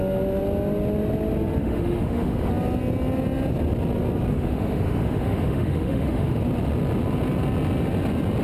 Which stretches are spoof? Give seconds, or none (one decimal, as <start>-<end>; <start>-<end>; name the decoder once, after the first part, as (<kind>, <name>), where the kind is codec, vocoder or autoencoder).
1.6-2.5 (autoencoder, DAC-VAE); 4.3-6.4